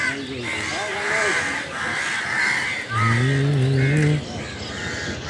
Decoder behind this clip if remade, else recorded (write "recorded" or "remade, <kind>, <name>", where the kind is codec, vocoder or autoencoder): recorded